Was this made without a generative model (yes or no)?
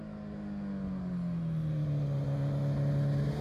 yes